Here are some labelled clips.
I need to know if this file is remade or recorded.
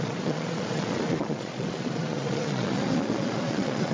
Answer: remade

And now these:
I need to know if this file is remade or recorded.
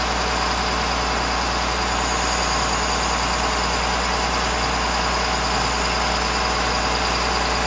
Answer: recorded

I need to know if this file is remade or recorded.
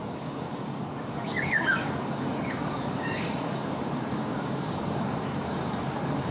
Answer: remade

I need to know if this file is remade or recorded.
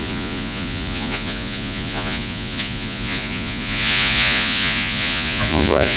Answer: remade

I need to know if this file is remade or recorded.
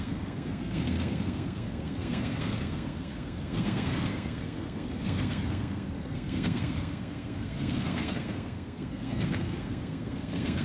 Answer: remade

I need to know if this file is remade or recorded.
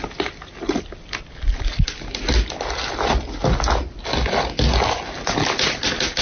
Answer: recorded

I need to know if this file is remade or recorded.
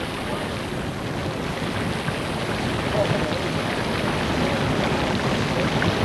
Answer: recorded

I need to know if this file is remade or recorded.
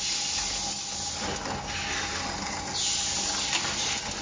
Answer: recorded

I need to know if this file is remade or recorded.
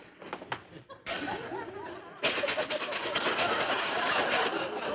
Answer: recorded